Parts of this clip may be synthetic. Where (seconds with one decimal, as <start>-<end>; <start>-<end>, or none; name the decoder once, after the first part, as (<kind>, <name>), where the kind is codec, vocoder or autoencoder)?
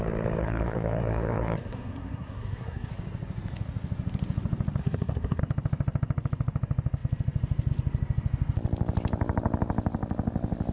0.4-2.9 (codec, SNAC); 4.8-5.4